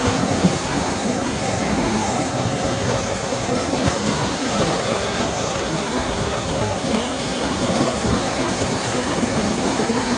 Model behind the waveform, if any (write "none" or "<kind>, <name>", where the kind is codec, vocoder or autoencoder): codec, SNAC